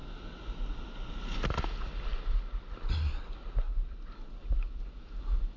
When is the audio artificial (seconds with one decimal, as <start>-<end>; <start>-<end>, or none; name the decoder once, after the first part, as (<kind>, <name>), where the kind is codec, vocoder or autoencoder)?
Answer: none